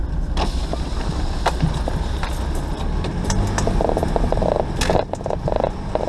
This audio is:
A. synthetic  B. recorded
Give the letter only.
B